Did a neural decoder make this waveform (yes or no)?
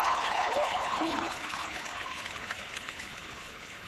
yes